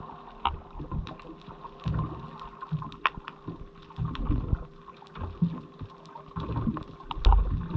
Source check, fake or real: real